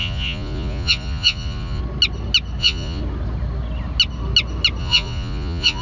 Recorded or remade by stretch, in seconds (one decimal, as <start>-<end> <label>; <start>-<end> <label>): 0.0-1.8 remade; 1.8-2.6 recorded; 2.6-3.0 remade; 3.0-4.8 recorded; 4.8-5.8 remade